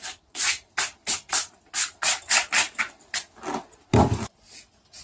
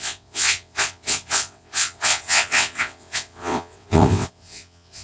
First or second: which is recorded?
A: first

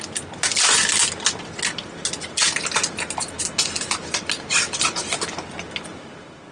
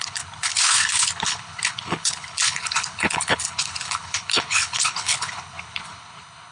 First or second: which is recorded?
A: first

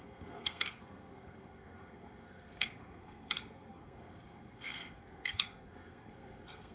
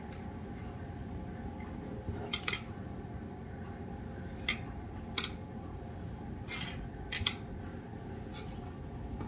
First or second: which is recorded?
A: second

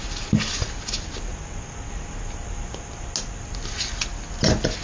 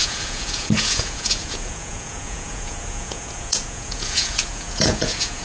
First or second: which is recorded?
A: first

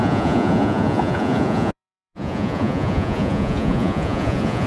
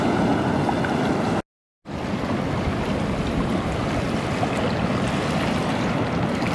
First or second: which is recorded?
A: second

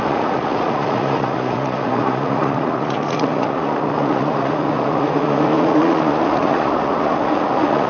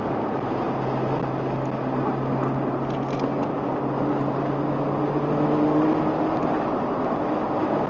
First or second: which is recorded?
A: second